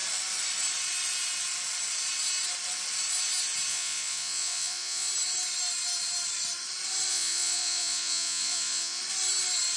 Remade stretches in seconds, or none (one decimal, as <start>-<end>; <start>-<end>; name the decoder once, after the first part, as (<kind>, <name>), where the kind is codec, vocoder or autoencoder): 3.7-5.1 (vocoder, Vocos); 7.1-9.0